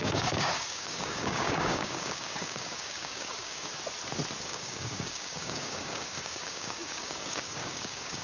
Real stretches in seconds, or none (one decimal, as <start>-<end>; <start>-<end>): 3.7-4.4